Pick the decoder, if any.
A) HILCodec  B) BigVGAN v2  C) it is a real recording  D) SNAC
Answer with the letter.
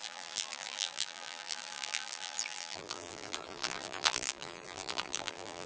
B